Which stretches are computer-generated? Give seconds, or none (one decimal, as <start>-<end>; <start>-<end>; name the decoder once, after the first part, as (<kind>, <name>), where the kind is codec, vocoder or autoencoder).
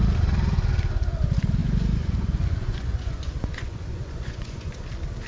1.6-4.8 (vocoder, Vocos)